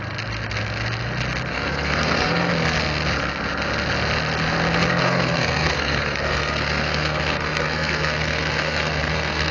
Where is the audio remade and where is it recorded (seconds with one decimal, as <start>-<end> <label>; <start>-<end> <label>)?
0.0-1.5 recorded; 1.5-2.5 remade; 2.5-5.0 recorded; 5.0-9.5 remade

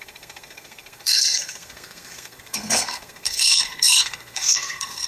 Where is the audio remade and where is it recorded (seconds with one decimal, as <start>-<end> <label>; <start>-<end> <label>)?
0.0-5.1 remade

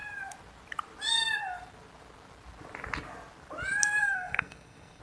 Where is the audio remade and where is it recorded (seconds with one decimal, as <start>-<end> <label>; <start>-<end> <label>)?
0.0-4.0 recorded; 4.0-5.0 remade

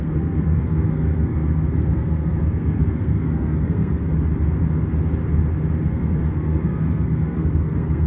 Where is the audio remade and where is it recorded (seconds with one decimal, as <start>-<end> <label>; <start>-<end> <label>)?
0.0-4.1 remade; 4.1-5.9 recorded; 5.9-8.1 remade

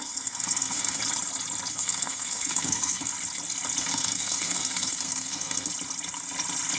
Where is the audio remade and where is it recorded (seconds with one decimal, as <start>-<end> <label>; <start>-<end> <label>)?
0.0-1.0 remade; 1.0-1.7 recorded; 1.7-3.1 remade; 3.1-3.8 recorded; 3.8-5.7 remade; 5.7-6.8 recorded

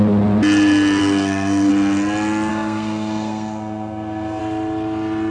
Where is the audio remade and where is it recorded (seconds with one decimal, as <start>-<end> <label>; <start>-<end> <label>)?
0.0-1.0 recorded; 1.0-1.7 remade; 1.7-2.5 recorded; 2.5-4.4 remade; 4.4-5.3 recorded

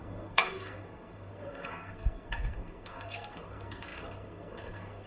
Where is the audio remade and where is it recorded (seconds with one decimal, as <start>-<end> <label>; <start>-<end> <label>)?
0.0-5.1 remade

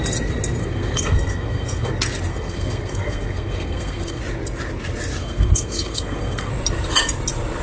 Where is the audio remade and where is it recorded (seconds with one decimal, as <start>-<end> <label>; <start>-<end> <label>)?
0.0-0.6 recorded; 0.6-1.9 remade; 1.9-2.3 recorded; 2.3-4.2 remade; 4.2-5.2 recorded; 5.2-6.5 remade; 6.5-7.6 recorded